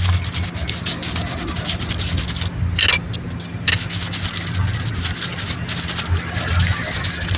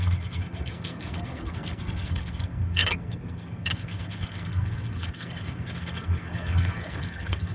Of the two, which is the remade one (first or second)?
second